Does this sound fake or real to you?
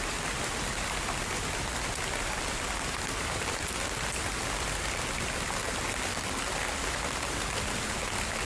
real